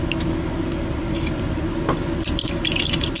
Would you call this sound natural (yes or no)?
yes